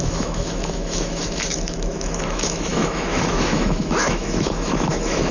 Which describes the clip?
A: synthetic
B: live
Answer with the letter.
A